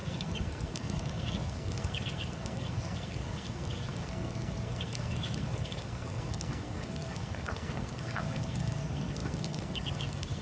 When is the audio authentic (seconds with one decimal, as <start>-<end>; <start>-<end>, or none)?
none